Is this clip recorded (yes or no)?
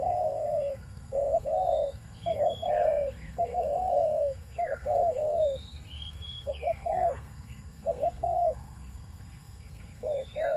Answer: no